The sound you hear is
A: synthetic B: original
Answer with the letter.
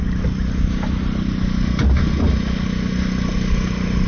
B